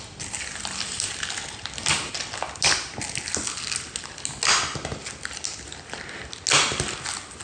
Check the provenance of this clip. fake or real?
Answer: real